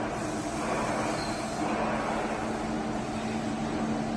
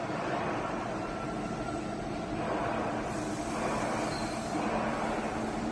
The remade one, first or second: second